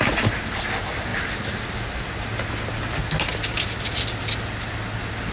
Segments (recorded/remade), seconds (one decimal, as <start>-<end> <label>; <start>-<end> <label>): 0.0-5.3 recorded